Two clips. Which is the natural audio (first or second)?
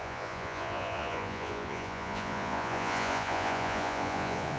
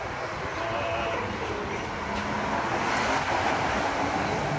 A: second